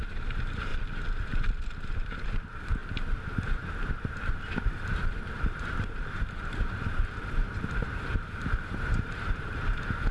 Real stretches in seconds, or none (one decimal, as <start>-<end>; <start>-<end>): 0.7-1.9